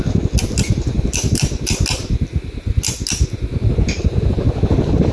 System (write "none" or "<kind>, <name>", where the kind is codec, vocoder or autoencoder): none